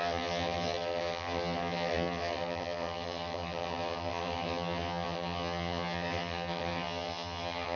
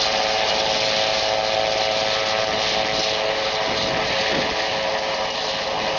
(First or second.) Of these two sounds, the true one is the second